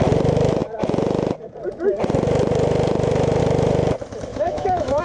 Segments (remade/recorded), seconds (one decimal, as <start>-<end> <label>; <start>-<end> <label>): 0.0-4.3 recorded; 4.3-5.0 remade